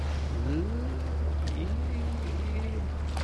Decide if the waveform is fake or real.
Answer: real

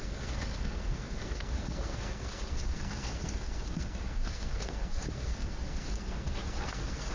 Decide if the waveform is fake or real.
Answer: fake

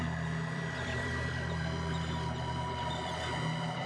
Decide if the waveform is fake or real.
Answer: fake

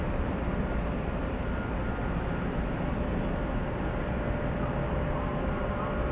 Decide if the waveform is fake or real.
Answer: real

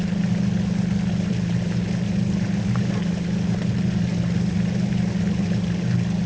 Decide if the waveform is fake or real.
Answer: real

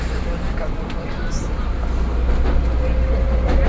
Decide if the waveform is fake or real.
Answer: real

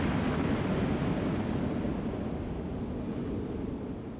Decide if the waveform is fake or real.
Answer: real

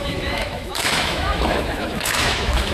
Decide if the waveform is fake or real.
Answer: fake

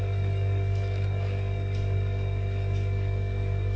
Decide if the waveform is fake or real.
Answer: fake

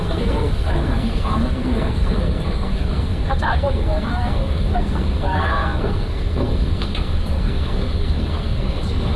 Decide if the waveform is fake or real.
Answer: fake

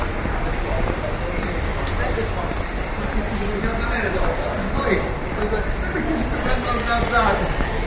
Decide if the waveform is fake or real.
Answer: real